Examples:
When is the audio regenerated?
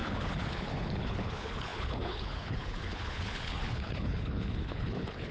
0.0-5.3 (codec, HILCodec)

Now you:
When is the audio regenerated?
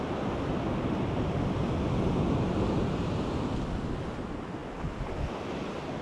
none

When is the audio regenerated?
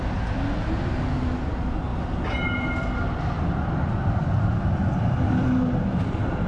none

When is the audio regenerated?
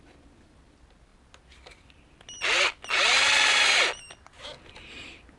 none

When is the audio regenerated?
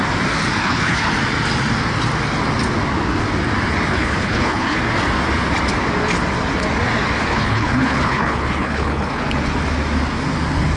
0.6-1.1 (codec, HILCodec); 3.9-4.8; 7.3-9.2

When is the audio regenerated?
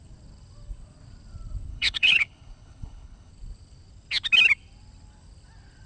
1.7-3.3 (codec, HILCodec)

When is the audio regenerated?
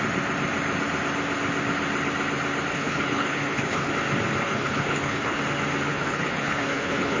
2.7-3.9 (codec, HILCodec); 4.4-5.4; 5.9-7.2